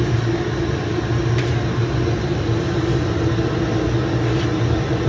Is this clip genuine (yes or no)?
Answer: yes